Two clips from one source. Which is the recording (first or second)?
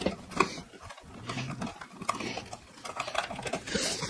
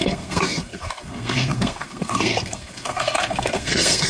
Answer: first